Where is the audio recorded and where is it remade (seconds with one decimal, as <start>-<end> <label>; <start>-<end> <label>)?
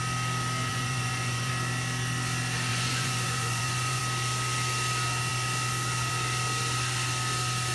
0.0-0.7 recorded; 0.7-1.5 remade; 1.5-2.7 recorded; 2.7-4.0 remade; 4.0-7.7 recorded